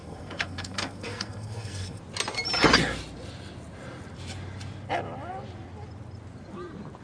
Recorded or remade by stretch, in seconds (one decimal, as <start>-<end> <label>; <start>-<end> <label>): 0.0-2.0 remade; 2.0-7.0 recorded